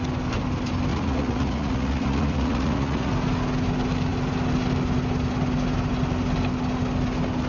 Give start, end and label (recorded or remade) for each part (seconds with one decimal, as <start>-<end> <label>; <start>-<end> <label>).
0.0-0.9 recorded; 0.9-3.1 remade; 3.1-7.5 recorded